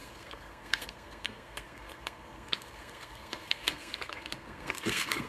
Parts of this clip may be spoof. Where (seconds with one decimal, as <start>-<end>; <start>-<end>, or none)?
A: 0.0-5.3